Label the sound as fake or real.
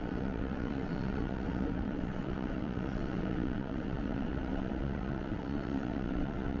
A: fake